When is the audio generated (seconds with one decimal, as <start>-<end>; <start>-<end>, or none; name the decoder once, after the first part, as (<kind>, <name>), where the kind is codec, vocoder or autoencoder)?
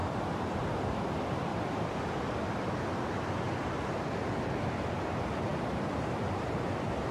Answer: 0.0-0.7 (vocoder, BigVGAN v2); 1.5-2.9